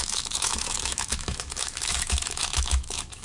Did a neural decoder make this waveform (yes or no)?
yes